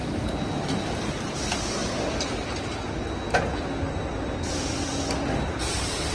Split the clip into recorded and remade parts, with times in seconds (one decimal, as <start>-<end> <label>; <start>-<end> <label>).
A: 0.0-6.1 recorded